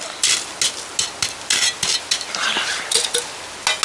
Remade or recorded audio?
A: recorded